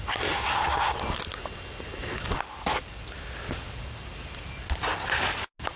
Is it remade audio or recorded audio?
recorded